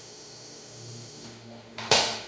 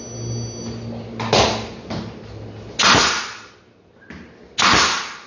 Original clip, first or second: second